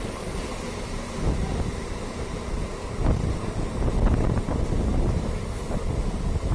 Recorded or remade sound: recorded